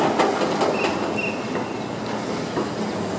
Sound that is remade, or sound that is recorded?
recorded